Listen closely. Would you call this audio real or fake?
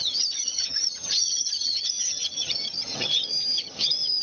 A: fake